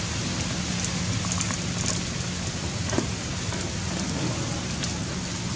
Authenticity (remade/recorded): recorded